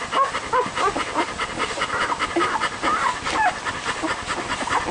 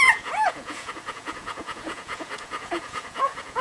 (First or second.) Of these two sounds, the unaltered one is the first